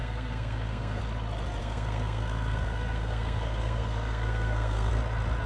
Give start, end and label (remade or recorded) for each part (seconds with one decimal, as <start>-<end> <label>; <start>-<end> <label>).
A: 0.0-1.0 remade; 1.0-1.6 recorded; 1.6-4.9 remade; 4.9-5.5 recorded